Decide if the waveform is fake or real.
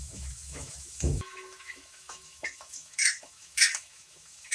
fake